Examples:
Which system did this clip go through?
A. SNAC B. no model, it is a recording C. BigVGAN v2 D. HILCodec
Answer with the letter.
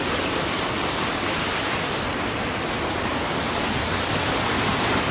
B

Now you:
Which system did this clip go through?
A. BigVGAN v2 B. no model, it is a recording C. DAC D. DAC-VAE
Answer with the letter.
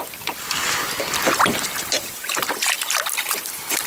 A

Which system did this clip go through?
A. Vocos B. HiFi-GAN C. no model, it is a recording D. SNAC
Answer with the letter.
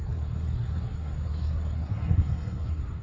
D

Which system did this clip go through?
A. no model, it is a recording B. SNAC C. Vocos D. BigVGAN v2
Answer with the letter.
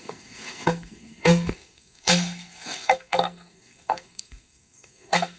B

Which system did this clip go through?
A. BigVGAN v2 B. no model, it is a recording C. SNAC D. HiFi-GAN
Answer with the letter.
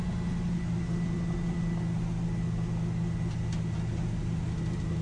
B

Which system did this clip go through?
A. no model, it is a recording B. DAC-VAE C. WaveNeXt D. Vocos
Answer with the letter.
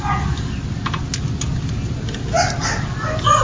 A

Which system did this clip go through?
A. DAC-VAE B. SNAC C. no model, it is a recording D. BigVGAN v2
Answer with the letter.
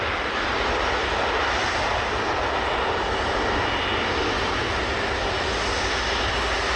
C